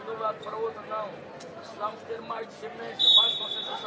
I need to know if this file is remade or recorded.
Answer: recorded